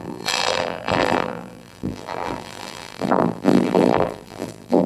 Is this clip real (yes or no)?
no